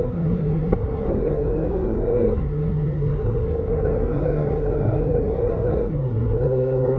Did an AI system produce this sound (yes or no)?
yes